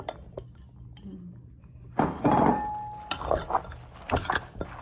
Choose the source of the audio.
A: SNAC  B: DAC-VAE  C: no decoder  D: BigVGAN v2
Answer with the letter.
C